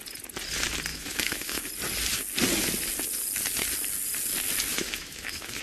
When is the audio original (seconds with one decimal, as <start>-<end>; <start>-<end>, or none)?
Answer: 0.0-0.9; 1.7-4.7